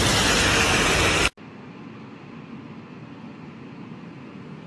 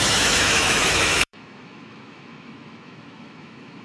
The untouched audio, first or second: first